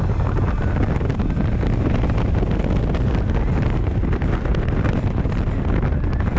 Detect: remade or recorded recorded